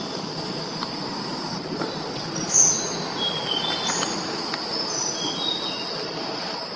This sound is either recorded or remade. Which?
recorded